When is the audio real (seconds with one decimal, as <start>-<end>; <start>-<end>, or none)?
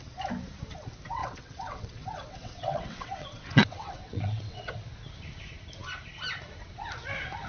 0.0-1.2; 4.7-7.5